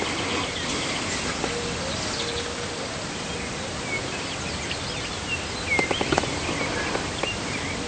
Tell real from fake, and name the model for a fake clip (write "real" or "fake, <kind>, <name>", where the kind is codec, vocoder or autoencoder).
real